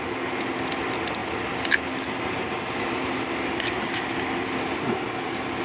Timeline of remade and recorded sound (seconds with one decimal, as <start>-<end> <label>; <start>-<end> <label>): 0.0-5.6 recorded